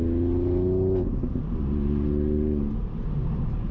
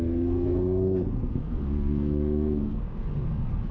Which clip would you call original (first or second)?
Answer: first